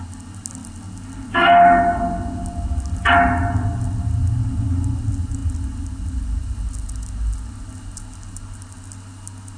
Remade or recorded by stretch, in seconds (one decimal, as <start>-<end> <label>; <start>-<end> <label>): 0.0-9.6 recorded